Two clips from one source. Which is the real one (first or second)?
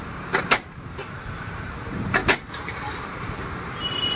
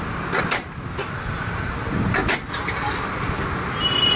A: second